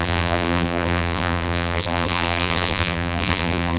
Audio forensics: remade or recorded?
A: remade